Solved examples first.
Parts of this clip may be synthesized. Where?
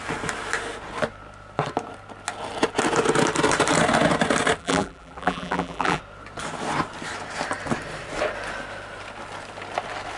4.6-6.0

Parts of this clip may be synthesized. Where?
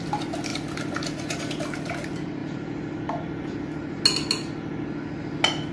0.5-1.4; 2.4-4.0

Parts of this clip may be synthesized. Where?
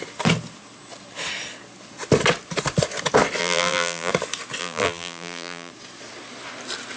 3.4-4.1; 4.6-5.7